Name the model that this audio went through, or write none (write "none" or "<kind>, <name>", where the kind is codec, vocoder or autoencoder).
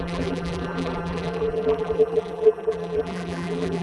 vocoder, BigVGAN v2